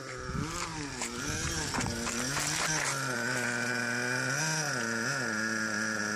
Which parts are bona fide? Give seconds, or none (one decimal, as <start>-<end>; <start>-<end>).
0.0-6.2